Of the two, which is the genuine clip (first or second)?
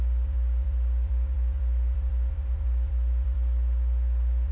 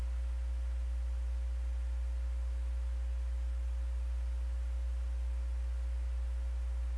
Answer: second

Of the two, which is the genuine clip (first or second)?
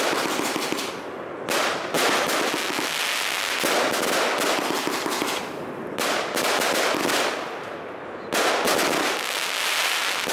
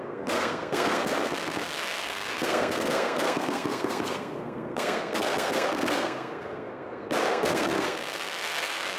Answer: first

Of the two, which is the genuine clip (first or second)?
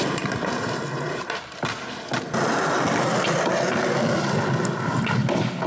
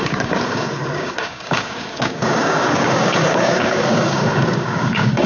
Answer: first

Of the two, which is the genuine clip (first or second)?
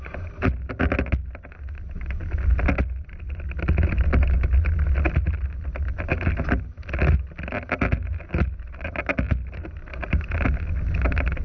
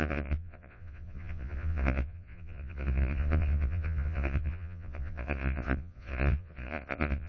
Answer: first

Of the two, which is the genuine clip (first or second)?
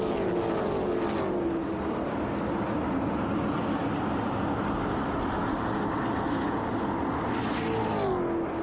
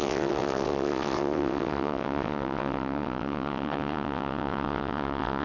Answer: first